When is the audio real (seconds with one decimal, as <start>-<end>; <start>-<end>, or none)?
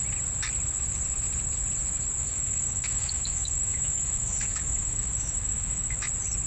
0.0-2.2; 6.1-6.5